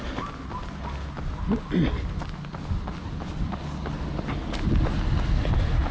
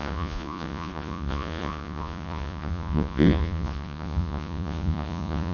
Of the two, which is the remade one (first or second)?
second